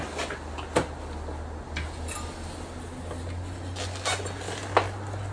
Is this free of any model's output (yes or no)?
yes